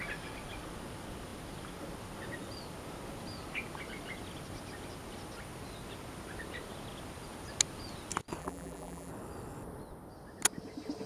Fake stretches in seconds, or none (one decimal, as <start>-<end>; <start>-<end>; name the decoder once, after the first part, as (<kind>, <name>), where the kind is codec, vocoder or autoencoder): 8.4-9.1 (vocoder, BigVGAN v2)